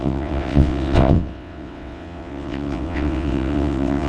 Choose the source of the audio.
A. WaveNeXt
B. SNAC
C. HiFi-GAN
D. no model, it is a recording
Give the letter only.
A